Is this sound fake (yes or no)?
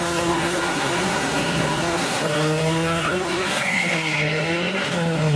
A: yes